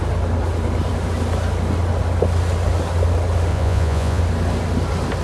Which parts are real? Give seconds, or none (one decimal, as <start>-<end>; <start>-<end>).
0.0-3.5; 4.2-5.2